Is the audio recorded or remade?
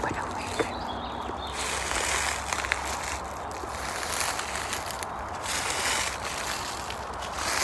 recorded